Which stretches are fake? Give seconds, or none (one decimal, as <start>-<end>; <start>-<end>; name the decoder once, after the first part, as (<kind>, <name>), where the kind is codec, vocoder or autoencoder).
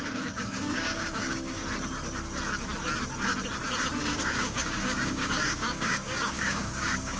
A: 0.0-1.6 (codec, DAC); 4.0-7.2